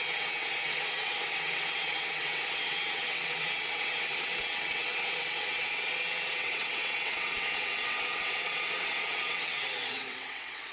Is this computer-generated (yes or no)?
yes